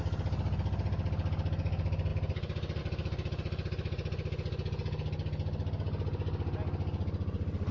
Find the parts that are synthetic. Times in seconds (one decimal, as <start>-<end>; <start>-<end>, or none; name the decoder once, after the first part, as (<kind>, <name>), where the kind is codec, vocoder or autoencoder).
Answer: none